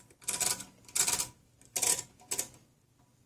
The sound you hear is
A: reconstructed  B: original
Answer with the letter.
B